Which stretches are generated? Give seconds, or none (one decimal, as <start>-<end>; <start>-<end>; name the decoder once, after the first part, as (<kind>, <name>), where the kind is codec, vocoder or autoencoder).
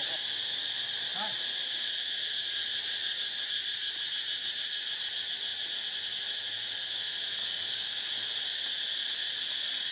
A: 7.4-8.1 (codec, DAC)